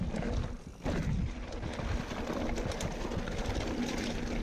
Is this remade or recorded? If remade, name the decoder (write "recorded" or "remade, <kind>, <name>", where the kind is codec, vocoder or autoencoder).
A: recorded